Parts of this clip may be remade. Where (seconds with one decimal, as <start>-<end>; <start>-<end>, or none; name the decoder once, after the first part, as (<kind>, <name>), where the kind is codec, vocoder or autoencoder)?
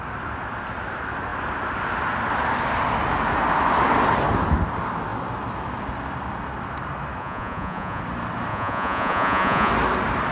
7.2-8.0 (vocoder, Vocos); 8.5-9.7